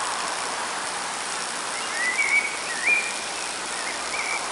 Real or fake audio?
fake